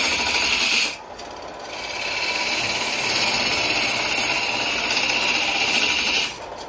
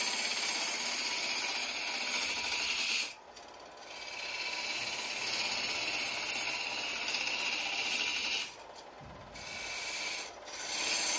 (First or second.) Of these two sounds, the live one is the second